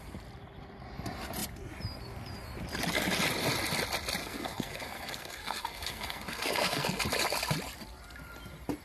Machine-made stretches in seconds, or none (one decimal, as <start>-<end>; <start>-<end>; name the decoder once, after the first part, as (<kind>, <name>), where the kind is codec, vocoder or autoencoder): 4.2-7.0 (codec, SNAC)